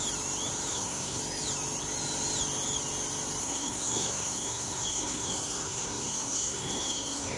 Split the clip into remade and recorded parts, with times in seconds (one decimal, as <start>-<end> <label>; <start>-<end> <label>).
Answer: 0.0-0.7 recorded; 0.7-1.2 remade; 1.2-3.4 recorded; 3.4-7.4 remade